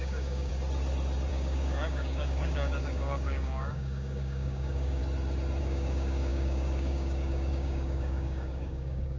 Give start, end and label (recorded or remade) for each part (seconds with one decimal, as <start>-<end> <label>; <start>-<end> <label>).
0.0-0.5 remade; 0.5-1.3 recorded; 1.3-5.0 remade; 5.0-5.6 recorded; 5.6-9.2 remade